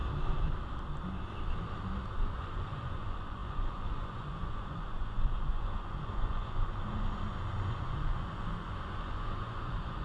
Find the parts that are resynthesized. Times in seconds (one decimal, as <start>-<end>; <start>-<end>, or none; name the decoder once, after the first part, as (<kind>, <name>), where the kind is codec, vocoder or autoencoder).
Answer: 2.2-10.0 (vocoder, Vocos)